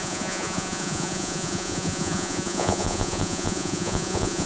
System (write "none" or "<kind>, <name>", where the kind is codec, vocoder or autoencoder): vocoder, Vocos